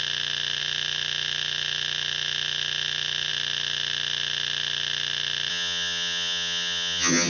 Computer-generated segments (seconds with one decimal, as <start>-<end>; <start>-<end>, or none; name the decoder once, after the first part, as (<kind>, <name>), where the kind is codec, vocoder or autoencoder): 5.5-7.3 (vocoder, HiFi-GAN)